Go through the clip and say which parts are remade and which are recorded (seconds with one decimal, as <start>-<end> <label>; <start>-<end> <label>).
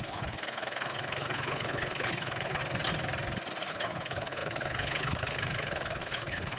0.0-2.6 remade; 2.6-3.7 recorded; 3.7-6.6 remade